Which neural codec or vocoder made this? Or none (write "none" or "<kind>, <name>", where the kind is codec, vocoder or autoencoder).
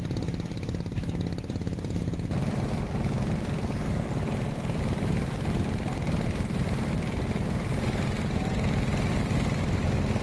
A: none